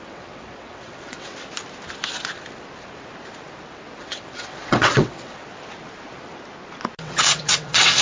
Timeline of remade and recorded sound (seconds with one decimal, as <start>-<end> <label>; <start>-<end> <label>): 0.0-1.3 remade; 1.3-4.0 recorded; 4.0-5.4 remade; 5.4-7.0 recorded; 7.0-8.0 remade